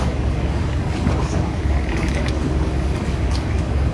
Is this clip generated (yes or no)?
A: yes